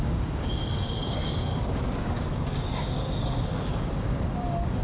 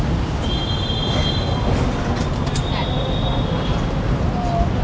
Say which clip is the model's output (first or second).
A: first